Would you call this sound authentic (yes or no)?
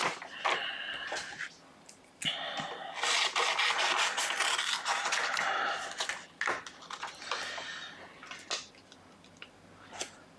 yes